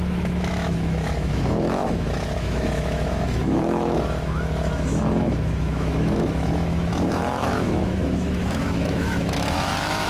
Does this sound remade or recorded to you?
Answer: remade